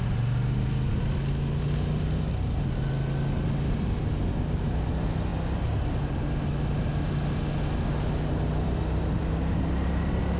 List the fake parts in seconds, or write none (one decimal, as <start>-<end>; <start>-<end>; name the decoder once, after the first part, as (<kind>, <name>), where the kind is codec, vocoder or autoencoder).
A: none

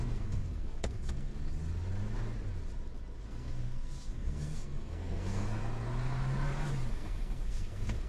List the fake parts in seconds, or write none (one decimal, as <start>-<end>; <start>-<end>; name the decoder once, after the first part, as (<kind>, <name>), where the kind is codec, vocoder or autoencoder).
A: 0.0-1.3 (codec, SNAC); 3.2-5.6; 6.9-8.1